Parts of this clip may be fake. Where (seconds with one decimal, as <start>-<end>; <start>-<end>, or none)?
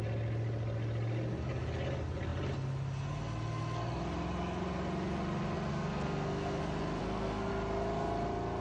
5.7-6.6; 7.0-7.5